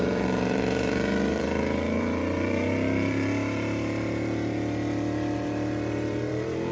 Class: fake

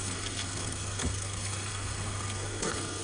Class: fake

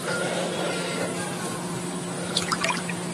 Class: real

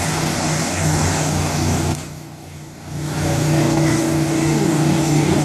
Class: fake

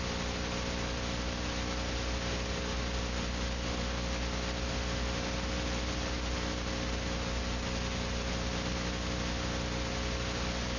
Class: real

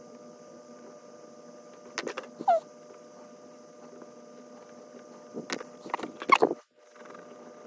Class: real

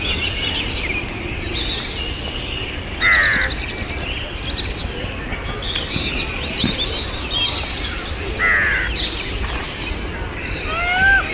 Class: real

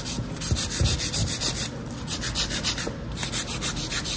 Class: real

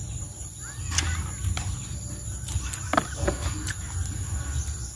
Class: real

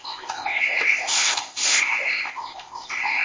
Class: fake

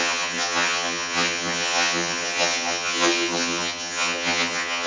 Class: fake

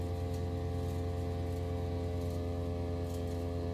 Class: real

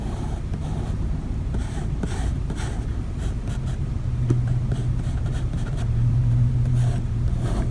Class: fake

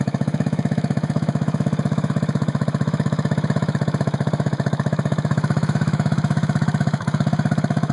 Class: fake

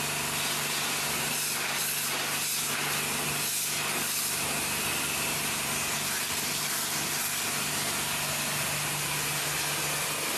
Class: real